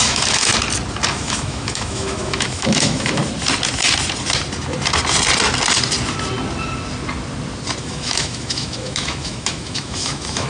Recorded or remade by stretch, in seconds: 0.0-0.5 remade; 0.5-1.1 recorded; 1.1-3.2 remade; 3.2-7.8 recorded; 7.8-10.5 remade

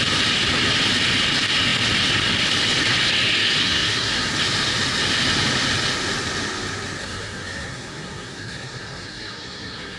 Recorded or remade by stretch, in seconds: 0.0-3.6 recorded; 3.6-4.3 remade; 4.3-7.0 recorded; 7.0-10.0 remade